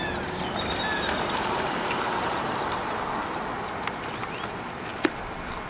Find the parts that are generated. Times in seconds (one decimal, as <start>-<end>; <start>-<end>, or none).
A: 0.9-2.4